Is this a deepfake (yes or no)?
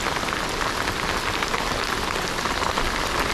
no